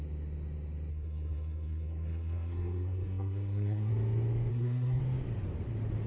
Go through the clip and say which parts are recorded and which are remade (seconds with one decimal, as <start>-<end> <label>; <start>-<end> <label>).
0.0-0.9 recorded; 0.9-3.9 remade; 3.9-4.5 recorded; 4.5-5.0 remade; 5.0-6.1 recorded